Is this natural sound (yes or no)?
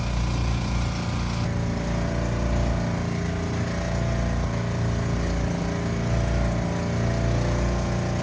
yes